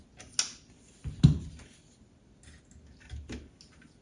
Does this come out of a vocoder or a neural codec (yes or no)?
no